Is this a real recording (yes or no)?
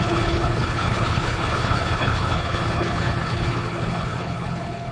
no